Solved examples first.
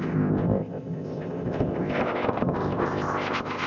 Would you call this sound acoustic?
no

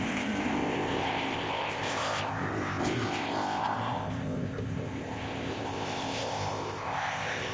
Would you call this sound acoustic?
no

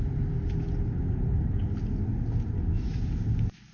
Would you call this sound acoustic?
yes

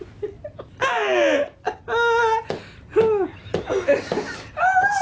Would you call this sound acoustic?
yes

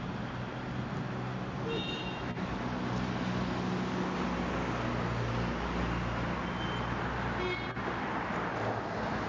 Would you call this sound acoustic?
yes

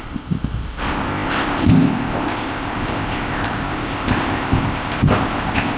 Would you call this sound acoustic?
no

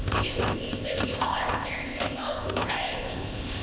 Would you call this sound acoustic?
no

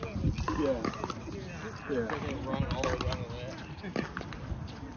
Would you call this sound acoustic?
yes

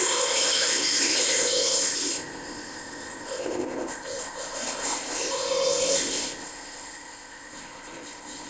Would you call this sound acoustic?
no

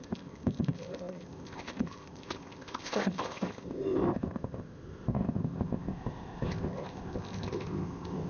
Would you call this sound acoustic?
no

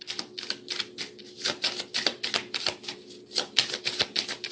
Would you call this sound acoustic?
yes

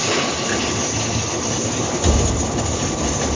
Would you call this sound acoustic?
yes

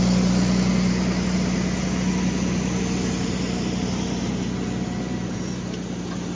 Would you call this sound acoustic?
yes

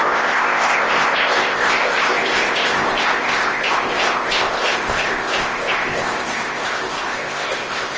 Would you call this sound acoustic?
no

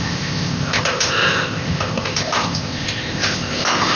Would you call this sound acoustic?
no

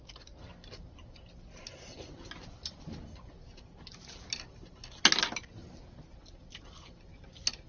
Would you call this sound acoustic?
yes